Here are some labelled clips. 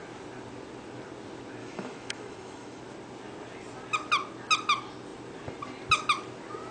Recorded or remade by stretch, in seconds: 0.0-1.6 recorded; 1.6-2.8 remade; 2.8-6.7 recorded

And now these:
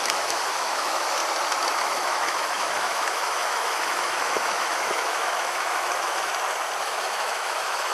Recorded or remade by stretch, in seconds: 0.0-1.2 remade; 1.2-1.8 recorded; 1.8-6.3 remade; 6.3-6.8 recorded; 6.8-7.9 remade

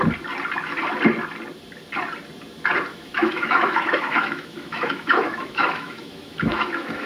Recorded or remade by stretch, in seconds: 0.0-2.9 recorded; 2.9-7.1 remade

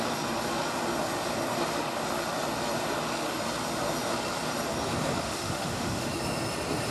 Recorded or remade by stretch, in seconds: 0.0-5.2 recorded; 5.2-6.1 remade; 6.1-6.9 recorded